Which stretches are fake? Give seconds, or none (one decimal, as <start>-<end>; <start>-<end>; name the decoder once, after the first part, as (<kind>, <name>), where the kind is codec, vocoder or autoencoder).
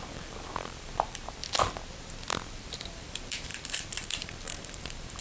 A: 0.0-1.4 (vocoder, BigVGAN v2); 2.5-5.2